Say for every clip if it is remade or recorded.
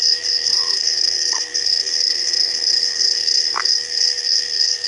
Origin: remade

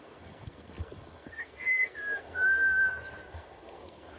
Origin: remade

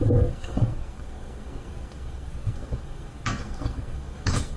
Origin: remade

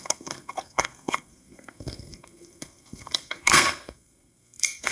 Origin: remade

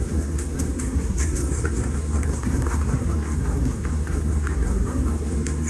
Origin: remade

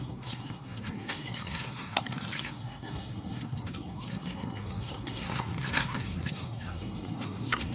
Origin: remade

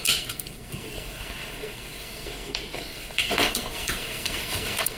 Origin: remade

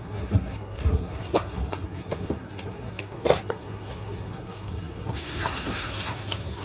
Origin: remade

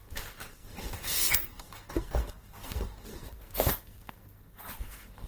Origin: remade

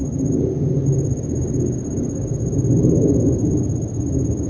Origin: recorded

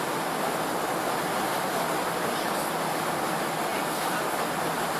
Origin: recorded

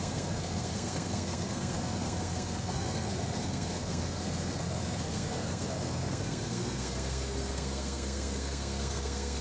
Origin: remade